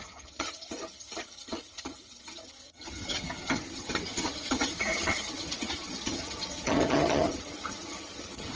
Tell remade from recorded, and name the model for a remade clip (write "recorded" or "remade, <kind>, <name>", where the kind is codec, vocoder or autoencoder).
remade, vocoder, HiFi-GAN